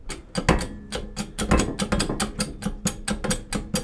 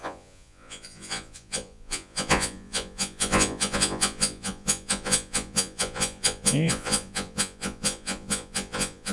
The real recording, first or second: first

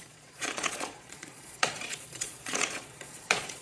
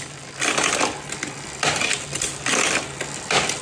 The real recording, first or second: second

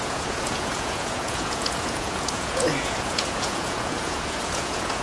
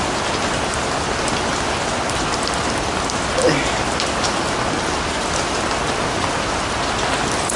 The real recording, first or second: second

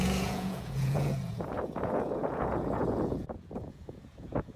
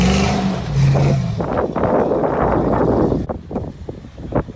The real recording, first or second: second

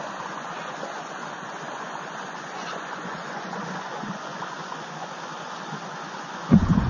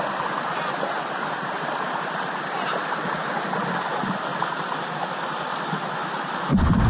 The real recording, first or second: second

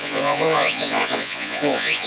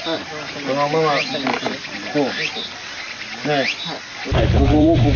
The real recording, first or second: second